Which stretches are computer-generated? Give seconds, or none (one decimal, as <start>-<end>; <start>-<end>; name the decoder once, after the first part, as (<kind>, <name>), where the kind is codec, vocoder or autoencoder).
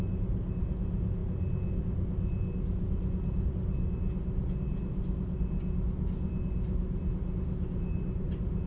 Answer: none